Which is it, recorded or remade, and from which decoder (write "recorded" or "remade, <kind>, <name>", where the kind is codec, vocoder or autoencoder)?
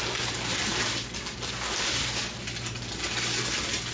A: recorded